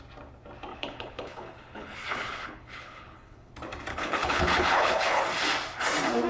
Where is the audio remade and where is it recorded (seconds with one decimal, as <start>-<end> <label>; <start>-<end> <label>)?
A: 0.0-0.7 recorded; 0.7-3.5 remade; 3.5-3.9 recorded; 3.9-5.2 remade; 5.2-6.3 recorded